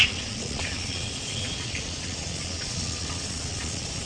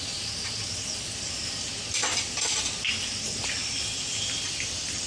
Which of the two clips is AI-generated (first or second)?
first